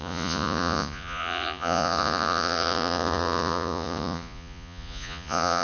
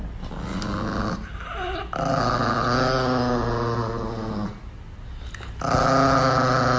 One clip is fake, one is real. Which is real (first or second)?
second